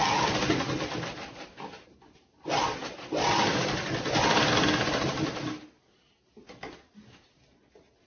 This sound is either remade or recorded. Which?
recorded